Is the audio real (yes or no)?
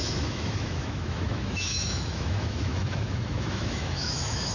no